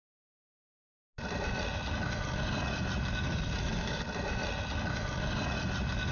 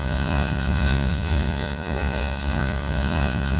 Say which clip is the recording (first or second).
first